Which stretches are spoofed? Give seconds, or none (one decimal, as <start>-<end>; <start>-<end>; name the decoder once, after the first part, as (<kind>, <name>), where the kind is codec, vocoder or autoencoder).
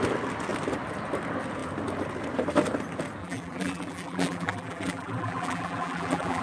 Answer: 3.2-6.4 (vocoder, BigVGAN v2)